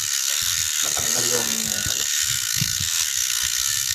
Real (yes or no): no